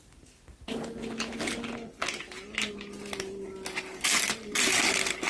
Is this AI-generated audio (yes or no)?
no